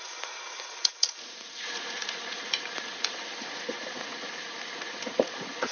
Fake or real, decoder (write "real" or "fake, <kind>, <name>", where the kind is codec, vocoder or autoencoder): fake, vocoder, Vocos